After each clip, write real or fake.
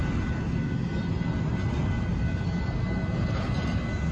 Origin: real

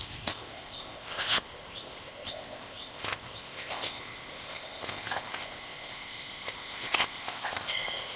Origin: fake